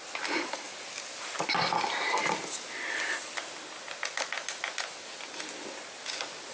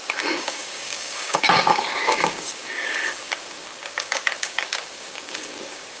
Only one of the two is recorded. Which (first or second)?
first